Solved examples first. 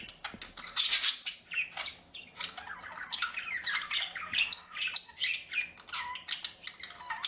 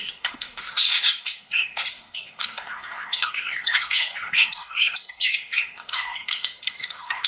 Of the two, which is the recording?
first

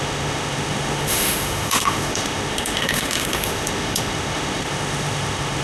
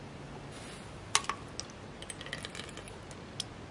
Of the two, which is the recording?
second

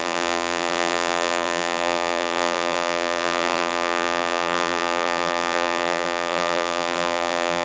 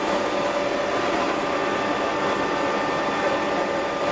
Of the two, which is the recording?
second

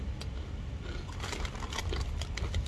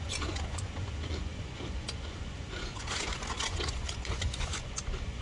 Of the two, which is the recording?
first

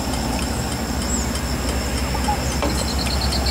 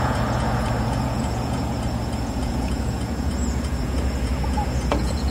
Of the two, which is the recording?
first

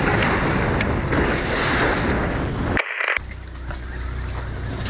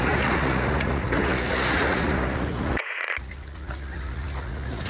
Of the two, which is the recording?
first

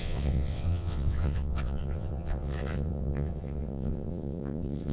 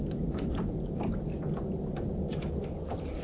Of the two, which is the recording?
second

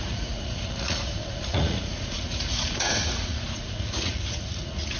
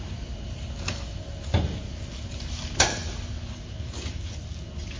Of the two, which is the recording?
second